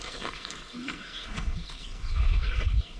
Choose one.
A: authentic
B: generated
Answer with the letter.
B